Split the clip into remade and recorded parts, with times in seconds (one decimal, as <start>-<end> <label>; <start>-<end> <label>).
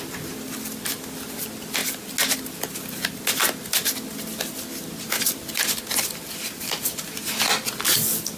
0.0-8.4 recorded